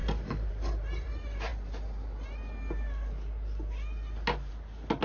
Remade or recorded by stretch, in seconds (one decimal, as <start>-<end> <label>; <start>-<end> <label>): 0.0-5.0 recorded

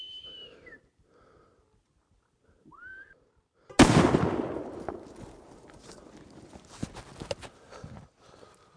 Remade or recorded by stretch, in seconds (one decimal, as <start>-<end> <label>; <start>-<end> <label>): 0.0-8.8 recorded

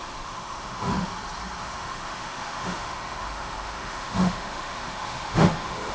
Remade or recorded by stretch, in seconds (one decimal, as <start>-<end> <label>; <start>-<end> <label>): 0.0-1.1 remade; 1.1-1.6 recorded; 1.6-5.9 remade